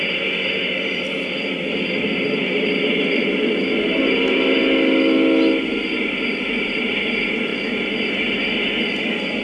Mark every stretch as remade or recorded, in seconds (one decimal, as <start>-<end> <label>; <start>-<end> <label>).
0.0-2.4 recorded; 2.4-3.7 remade; 3.7-9.4 recorded